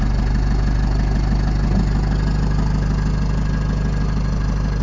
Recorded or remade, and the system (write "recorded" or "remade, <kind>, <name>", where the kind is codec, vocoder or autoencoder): recorded